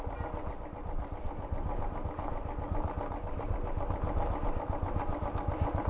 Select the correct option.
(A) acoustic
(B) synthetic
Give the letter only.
A